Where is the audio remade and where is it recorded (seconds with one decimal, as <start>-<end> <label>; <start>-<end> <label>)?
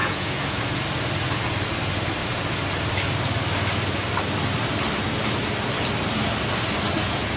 0.0-0.6 remade; 0.6-7.4 recorded